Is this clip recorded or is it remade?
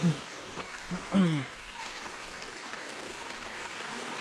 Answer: remade